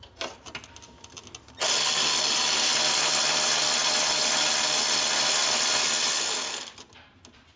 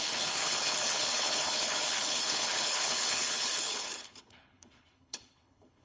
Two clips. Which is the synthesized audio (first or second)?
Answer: second